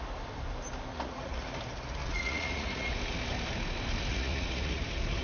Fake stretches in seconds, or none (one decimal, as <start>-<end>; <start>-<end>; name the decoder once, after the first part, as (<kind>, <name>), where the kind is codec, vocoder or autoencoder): 0.9-1.5 (vocoder, Vocos); 2.0-2.9; 4.1-4.8